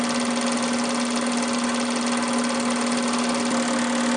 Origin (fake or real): real